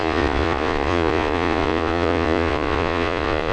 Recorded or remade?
remade